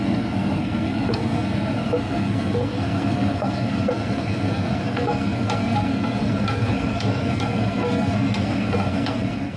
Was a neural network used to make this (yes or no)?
yes